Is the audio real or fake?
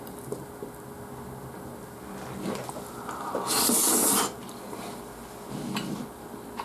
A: real